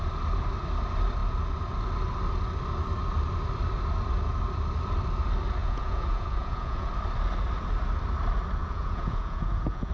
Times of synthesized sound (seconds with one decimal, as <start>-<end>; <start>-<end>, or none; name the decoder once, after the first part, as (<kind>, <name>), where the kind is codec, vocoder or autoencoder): 5.6-6.9 (vocoder, Vocos); 8.6-9.9